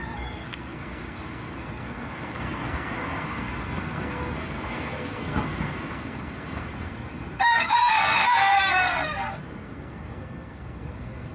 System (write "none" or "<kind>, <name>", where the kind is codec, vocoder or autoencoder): codec, SNAC